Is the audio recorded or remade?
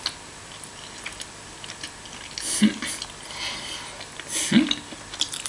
recorded